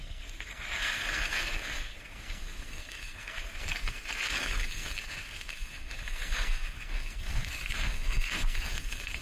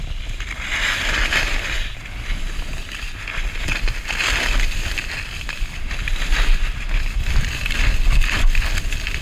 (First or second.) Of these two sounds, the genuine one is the second